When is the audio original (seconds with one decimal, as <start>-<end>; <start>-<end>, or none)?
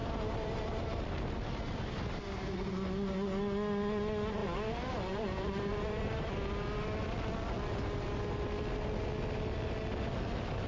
1.3-4.4; 6.3-10.7